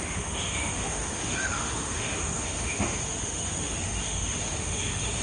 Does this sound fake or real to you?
fake